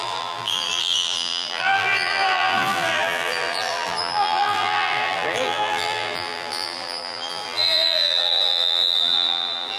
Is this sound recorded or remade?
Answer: remade